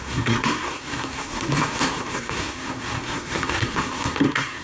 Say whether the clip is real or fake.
fake